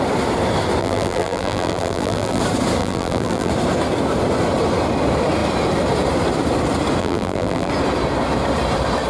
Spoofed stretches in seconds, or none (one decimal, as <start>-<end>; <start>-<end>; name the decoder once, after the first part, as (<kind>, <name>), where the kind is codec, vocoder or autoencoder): 0.8-2.4 (vocoder, BigVGAN v2); 2.8-3.5; 7.0-7.7